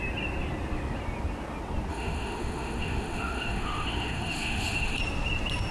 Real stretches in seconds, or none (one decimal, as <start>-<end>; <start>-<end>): 0.0-1.9; 5.0-5.7